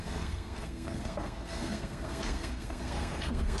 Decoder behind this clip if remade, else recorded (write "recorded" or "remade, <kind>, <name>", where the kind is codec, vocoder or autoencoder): remade, codec, SNAC